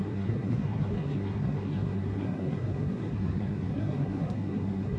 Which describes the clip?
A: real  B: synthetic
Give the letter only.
B